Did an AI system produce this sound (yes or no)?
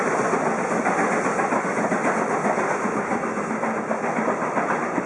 no